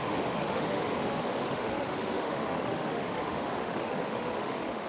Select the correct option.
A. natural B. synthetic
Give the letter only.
B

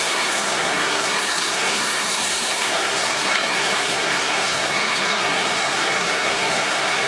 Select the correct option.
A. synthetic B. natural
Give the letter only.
A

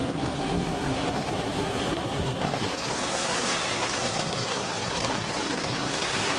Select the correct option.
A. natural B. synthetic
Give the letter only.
B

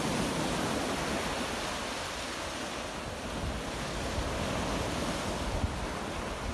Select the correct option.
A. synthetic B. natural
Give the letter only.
B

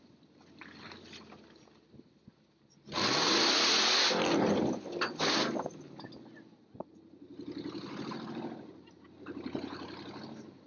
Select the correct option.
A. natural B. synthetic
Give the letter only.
A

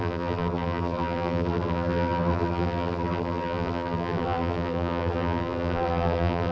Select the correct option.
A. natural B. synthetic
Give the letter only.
B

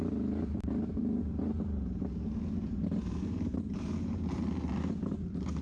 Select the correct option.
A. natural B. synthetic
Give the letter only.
B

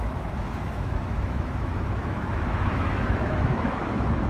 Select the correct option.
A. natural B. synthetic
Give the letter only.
B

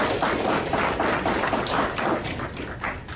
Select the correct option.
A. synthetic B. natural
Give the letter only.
B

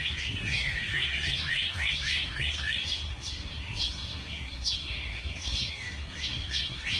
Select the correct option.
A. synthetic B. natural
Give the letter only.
A